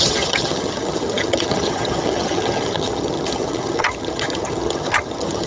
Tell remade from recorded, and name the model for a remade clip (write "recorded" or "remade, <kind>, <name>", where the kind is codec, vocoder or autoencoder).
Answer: remade, vocoder, HiFi-GAN